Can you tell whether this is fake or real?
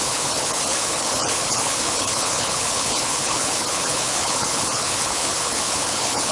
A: fake